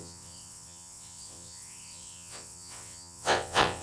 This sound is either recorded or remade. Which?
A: remade